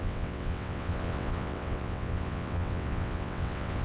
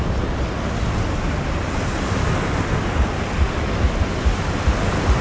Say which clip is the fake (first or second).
first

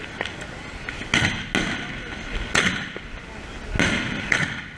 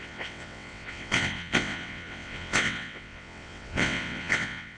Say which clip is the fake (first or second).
second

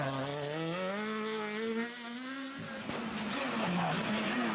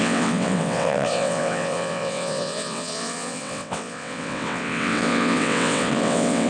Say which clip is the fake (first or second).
second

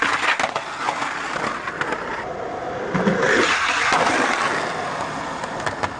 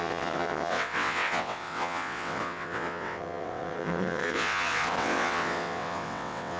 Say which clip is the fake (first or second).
second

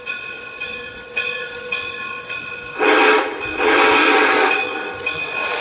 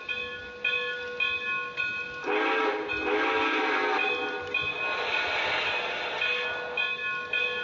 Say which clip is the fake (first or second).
first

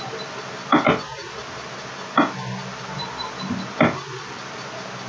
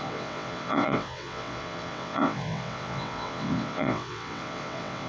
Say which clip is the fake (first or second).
second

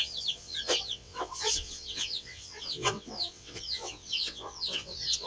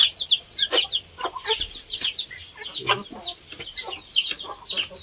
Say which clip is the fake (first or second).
first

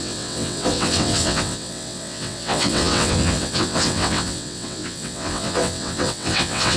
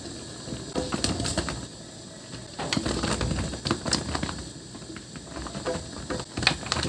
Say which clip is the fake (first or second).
first